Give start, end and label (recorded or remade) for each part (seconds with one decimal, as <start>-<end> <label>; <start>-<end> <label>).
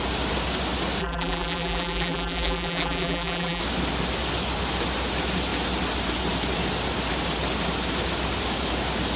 0.0-1.0 recorded; 1.0-3.6 remade; 3.6-9.2 recorded